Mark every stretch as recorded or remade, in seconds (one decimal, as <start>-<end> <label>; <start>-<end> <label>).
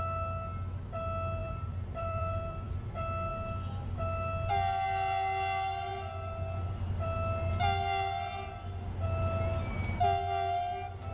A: 0.0-1.4 recorded; 1.4-2.9 remade; 2.9-11.1 recorded